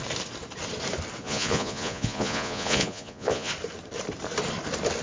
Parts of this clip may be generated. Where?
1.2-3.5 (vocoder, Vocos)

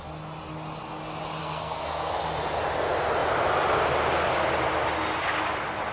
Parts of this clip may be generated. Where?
1.4-2.1 (codec, SNAC)

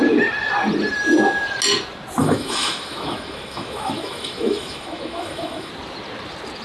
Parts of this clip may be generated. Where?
2.2-5.7 (autoencoder, DAC-VAE)

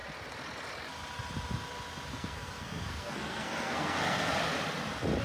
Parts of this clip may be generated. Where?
2.1-4.3 (codec, SNAC)

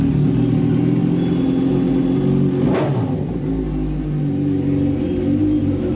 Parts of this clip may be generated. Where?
none

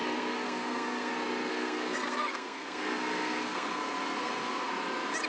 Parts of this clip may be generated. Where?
0.0-1.1 (codec, SNAC); 1.5-4.7

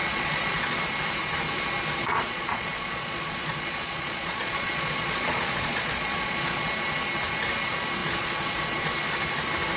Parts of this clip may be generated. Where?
0.0-0.8 (vocoder, Vocos); 2.0-6.7; 8.0-8.9

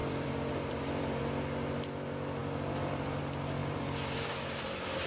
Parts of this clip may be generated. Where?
0.0-1.2 (vocoder, BigVGAN v2); 2.4-3.2; 3.6-5.1